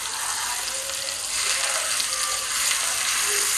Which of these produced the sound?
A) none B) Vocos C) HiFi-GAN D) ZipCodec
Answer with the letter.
A